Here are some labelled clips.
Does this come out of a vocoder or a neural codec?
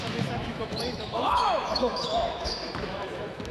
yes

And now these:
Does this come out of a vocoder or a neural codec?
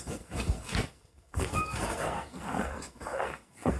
yes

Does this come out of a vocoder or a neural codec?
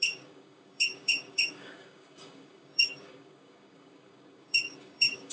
yes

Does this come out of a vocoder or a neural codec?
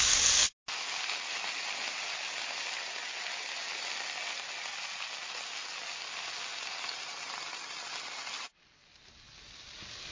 no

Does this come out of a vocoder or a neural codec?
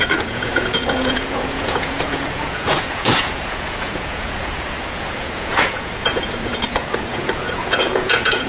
yes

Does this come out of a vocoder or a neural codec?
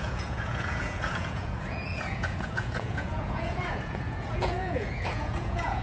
yes